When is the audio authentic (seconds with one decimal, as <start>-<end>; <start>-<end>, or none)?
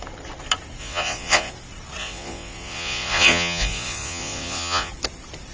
0.0-0.8; 1.5-2.0; 4.9-5.5